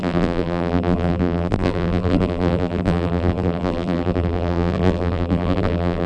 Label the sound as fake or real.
fake